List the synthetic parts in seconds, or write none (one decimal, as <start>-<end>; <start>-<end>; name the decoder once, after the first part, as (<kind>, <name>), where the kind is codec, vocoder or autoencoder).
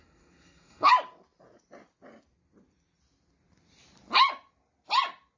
0.0-0.9 (codec, SNAC)